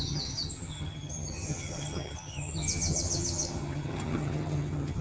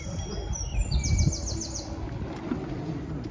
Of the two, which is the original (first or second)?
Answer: second